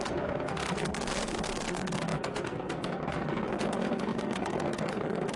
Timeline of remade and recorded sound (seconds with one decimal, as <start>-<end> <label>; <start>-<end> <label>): 0.0-5.4 remade

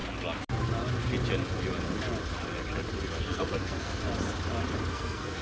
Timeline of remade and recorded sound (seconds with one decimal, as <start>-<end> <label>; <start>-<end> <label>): 0.0-3.2 recorded; 3.2-4.0 remade; 4.0-4.9 recorded; 4.9-5.4 remade